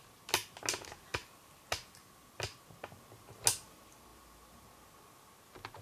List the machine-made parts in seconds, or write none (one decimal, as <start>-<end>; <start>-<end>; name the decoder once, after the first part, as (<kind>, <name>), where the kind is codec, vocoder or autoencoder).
none